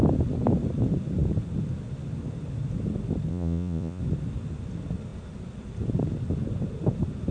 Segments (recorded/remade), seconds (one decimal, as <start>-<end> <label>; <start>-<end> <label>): 0.0-3.3 recorded; 3.3-4.0 remade; 4.0-7.3 recorded